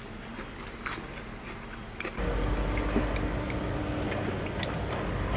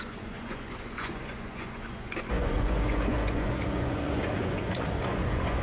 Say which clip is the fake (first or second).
second